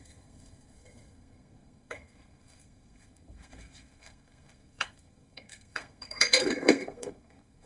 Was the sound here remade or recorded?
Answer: remade